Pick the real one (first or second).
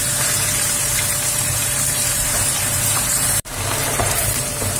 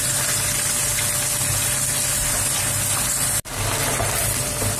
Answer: second